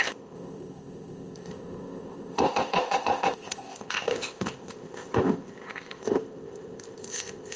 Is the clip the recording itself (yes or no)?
no